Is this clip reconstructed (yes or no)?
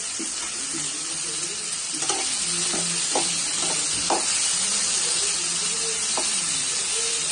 no